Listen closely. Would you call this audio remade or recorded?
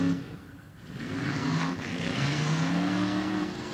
remade